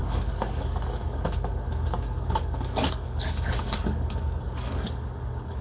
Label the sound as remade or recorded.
remade